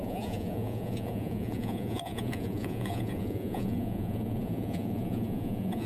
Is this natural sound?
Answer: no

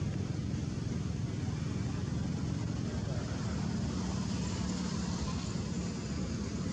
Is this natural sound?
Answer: yes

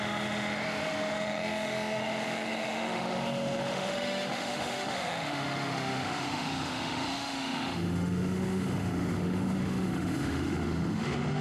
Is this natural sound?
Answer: no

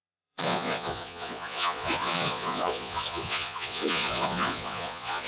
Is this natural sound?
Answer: no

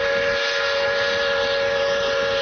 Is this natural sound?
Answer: yes